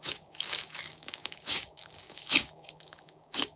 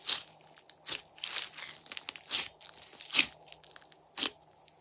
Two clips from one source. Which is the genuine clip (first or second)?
second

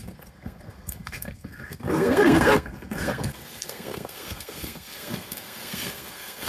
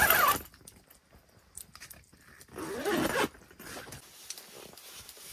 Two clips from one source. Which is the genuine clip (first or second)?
second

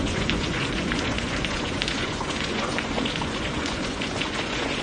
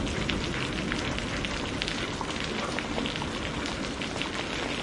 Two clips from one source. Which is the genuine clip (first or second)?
second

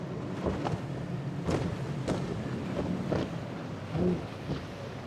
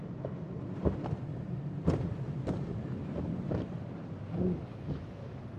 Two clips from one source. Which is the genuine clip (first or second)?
first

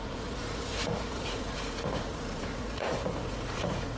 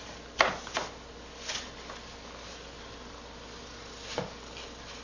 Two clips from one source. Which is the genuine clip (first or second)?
second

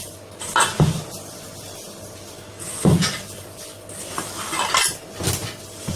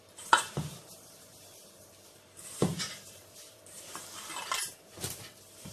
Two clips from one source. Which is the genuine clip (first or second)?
first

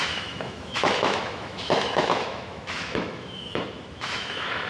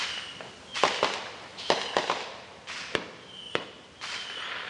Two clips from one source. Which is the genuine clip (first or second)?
second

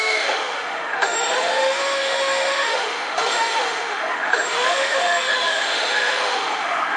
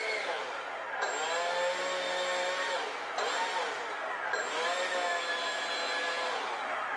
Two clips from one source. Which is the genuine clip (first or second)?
second